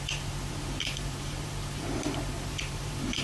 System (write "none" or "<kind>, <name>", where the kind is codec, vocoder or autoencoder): vocoder, BigVGAN v2